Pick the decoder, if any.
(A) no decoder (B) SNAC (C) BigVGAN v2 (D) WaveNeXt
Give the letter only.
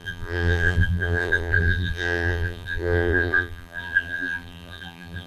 C